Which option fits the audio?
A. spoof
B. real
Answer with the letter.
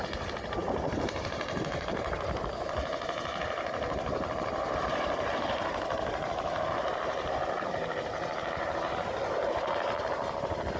A